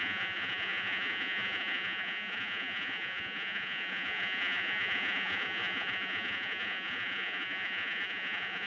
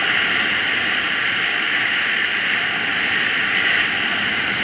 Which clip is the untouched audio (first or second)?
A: second